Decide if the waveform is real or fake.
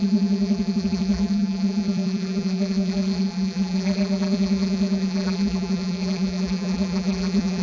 fake